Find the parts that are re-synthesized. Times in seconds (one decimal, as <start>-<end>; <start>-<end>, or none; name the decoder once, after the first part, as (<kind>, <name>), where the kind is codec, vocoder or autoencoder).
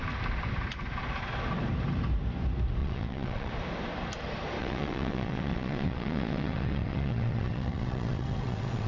2.8-3.5 (vocoder, WaveNeXt); 4.6-8.9